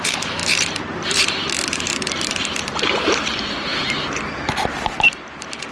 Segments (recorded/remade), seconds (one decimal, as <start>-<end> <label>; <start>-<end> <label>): 0.0-5.7 remade